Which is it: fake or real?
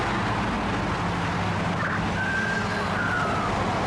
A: real